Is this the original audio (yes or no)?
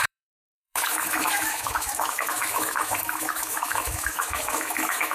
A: no